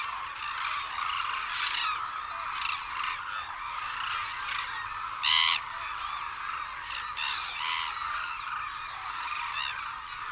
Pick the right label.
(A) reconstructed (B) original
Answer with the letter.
B